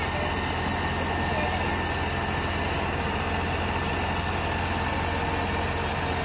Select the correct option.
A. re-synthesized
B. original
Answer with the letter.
B